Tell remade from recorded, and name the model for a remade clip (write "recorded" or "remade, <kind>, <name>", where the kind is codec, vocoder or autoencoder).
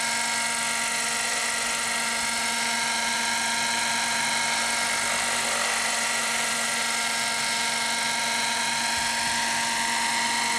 recorded